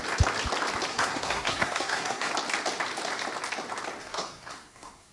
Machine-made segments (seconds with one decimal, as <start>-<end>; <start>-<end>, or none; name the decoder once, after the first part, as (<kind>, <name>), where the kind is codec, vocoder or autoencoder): 0.9-2.3 (codec, SNAC); 4.0-5.1